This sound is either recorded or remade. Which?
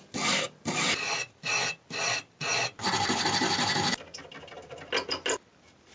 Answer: recorded